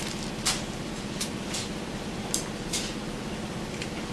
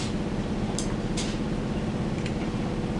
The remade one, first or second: first